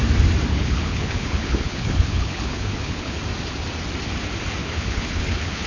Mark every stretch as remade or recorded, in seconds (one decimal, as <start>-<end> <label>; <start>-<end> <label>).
0.0-0.5 recorded; 0.5-3.2 remade; 3.2-4.6 recorded; 4.6-5.7 remade